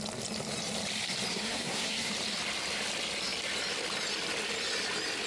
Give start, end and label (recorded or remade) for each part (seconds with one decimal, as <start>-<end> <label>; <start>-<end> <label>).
0.0-1.3 recorded; 1.3-2.1 remade; 2.1-5.3 recorded